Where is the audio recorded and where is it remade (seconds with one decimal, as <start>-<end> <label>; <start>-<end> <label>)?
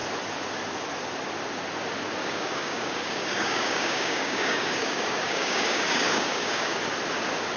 0.0-2.2 recorded; 2.2-6.8 remade; 6.8-7.6 recorded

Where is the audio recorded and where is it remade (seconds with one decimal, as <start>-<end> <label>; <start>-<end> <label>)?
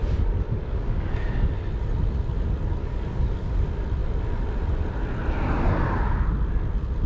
0.0-1.5 remade; 1.5-2.8 recorded; 2.8-3.6 remade; 3.6-7.1 recorded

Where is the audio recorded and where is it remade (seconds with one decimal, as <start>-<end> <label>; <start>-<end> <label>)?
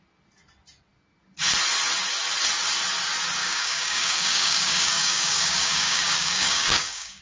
0.0-3.4 recorded; 3.4-7.2 remade